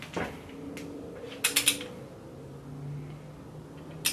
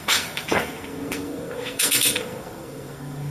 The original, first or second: first